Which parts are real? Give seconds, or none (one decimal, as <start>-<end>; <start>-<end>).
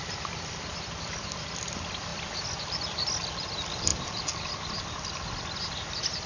0.0-6.3